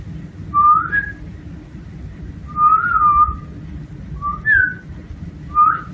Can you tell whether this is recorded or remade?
recorded